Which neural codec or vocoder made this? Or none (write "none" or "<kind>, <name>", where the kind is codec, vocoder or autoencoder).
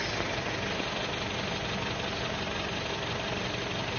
none